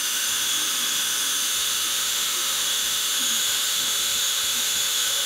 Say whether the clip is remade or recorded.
remade